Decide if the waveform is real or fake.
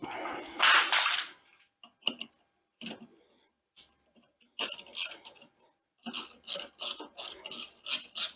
real